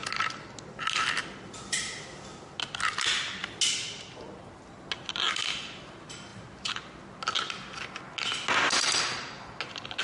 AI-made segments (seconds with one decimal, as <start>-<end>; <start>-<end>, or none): none